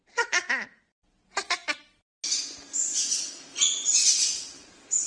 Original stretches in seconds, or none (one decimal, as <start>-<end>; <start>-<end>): 0.5-3.5